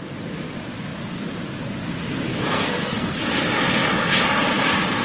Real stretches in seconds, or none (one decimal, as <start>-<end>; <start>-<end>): 0.0-2.3; 3.2-5.0